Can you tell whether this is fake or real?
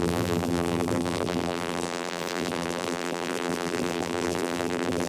fake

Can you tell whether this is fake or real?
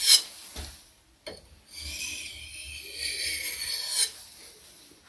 real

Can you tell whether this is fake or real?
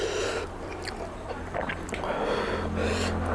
real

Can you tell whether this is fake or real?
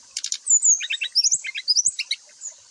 real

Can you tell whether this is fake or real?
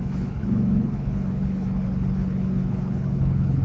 fake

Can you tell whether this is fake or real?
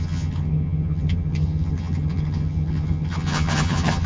fake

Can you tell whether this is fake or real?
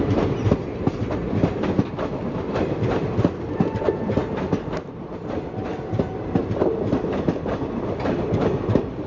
real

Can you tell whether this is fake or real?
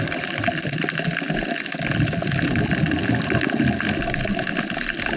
real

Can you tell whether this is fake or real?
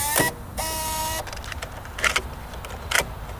real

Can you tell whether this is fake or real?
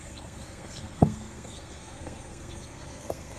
fake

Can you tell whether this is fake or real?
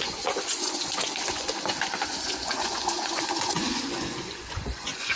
fake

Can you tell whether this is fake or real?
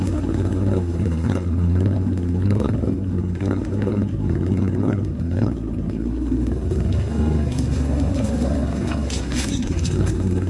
fake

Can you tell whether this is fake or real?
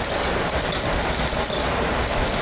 real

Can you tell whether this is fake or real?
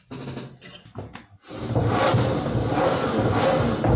real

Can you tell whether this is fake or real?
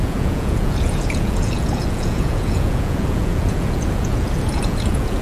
fake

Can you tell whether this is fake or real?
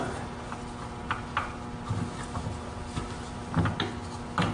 real